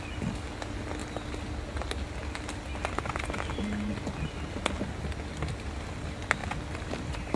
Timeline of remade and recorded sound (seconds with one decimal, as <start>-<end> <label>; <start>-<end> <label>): 0.0-7.4 recorded